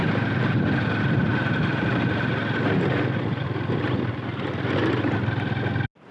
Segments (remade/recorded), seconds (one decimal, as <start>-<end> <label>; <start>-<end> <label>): 0.0-1.7 recorded; 1.7-2.9 remade; 2.9-6.1 recorded